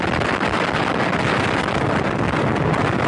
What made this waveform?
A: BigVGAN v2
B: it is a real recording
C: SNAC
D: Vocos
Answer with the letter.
B